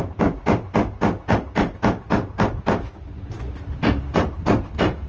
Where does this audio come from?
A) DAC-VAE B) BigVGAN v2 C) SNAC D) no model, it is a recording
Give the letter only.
D